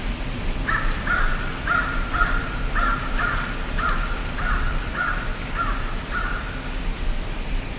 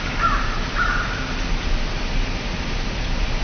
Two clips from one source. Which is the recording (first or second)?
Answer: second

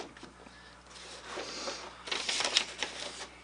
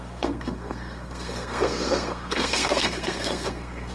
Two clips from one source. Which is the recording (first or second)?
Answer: first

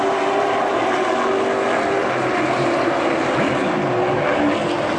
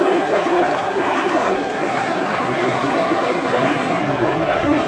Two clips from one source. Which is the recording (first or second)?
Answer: first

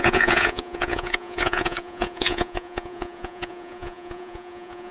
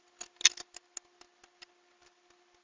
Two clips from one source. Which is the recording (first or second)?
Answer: second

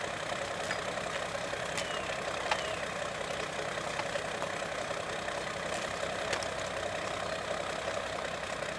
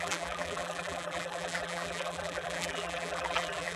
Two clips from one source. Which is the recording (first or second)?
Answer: first